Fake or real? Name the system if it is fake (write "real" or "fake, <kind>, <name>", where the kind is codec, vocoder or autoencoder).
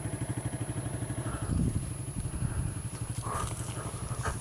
real